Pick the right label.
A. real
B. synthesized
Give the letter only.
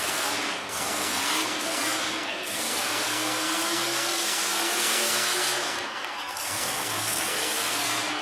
B